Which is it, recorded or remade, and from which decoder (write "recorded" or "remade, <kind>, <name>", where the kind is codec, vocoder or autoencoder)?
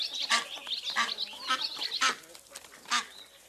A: recorded